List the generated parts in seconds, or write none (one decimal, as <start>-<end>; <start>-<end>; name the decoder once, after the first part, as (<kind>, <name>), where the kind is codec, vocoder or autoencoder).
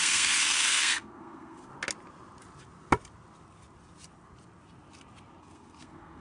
0.0-1.7 (codec, SNAC); 5.4-6.2